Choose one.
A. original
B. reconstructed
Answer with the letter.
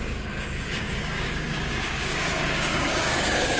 B